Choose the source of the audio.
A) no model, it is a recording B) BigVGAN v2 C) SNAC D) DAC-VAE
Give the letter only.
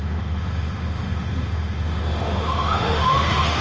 D